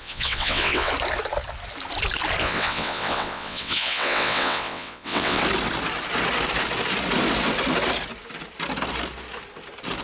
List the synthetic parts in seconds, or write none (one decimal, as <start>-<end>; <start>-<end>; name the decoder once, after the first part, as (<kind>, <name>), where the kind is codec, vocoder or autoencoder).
0.0-0.9 (vocoder, WaveNeXt); 2.4-5.4